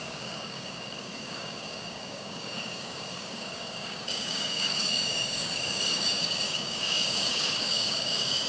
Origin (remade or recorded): remade